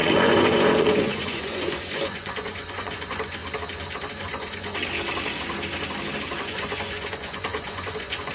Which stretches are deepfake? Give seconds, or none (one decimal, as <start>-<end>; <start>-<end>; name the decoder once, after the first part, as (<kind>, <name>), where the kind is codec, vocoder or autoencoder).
0.0-3.4 (vocoder, Vocos); 4.1-4.8; 6.4-8.3